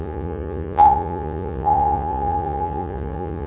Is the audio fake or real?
fake